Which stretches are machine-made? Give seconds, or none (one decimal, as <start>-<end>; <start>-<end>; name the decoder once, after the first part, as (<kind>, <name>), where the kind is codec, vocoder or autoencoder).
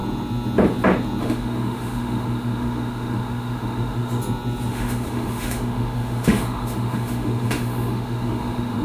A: 1.2-4.2 (autoencoder, DAC-VAE); 4.7-8.8